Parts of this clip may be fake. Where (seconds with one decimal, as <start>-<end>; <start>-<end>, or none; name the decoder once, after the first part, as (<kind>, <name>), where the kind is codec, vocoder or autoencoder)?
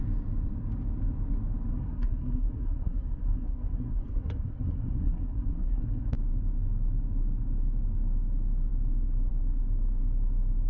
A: 1.7-6.1 (codec, SNAC)